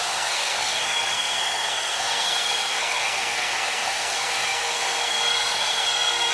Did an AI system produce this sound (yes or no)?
yes